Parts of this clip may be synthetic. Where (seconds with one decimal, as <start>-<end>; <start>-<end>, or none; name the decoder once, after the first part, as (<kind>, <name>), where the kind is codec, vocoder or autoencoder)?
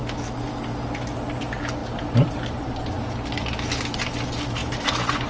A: 1.8-2.9 (vocoder, BigVGAN v2); 4.6-5.3